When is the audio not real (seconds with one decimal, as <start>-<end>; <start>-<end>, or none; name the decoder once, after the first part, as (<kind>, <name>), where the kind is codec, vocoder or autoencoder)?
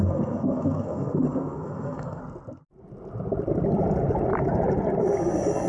0.0-2.2 (codec, SNAC)